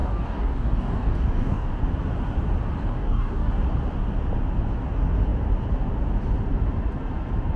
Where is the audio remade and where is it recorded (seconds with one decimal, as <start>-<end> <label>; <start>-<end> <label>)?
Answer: 0.0-1.7 remade; 1.7-2.9 recorded; 2.9-3.5 remade; 3.5-7.6 recorded